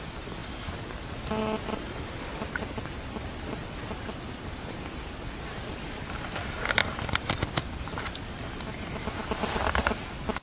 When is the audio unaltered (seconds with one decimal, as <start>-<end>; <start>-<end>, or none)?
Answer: 0.0-10.4